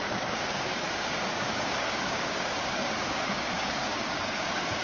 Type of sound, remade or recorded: remade